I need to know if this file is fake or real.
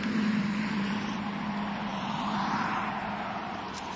fake